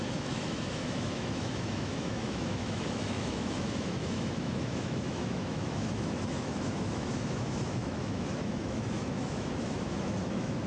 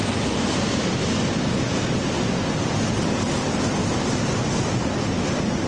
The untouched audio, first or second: second